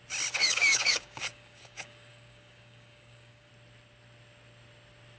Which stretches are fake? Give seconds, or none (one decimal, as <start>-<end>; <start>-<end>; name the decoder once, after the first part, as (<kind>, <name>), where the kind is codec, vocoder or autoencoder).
0.4-3.5 (codec, DAC)